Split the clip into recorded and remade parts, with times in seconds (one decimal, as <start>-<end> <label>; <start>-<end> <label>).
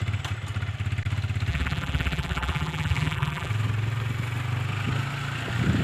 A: 0.0-1.5 recorded; 1.5-3.5 remade; 3.5-5.8 recorded